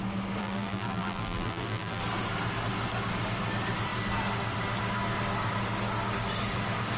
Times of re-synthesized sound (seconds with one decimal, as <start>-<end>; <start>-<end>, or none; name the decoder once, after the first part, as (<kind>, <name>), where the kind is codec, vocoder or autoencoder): 0.4-2.0 (vocoder, BigVGAN v2)